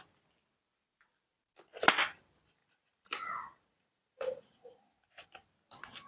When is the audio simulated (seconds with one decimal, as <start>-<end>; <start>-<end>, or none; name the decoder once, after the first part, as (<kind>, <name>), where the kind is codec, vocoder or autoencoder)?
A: 2.6-5.1 (vocoder, Vocos)